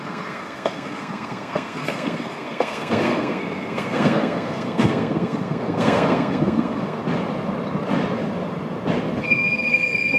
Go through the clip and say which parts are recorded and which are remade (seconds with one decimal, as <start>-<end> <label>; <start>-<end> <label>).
0.0-7.0 remade; 7.0-9.2 recorded; 9.2-10.2 remade